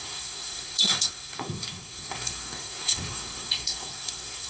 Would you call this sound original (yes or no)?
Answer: no